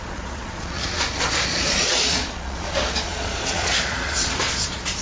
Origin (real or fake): fake